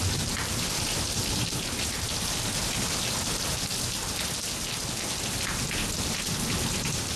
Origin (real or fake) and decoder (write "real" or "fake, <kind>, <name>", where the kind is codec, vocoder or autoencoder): real